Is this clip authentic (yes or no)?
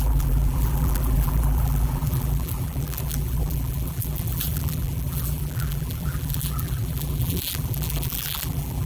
no